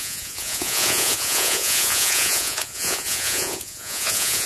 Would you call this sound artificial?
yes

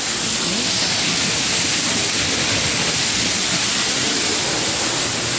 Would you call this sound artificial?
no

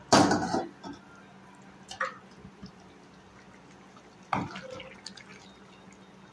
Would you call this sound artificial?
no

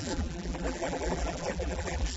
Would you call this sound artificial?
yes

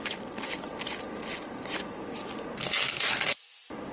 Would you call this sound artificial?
no